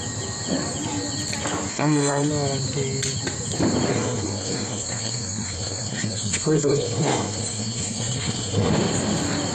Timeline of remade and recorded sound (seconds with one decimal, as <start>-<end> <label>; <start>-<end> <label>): 0.0-1.7 recorded; 1.7-2.3 remade; 2.3-3.9 recorded; 3.9-8.7 remade; 8.7-9.5 recorded